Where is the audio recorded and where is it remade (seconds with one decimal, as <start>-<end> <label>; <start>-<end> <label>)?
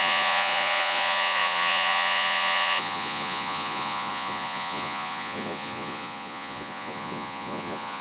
0.0-8.0 remade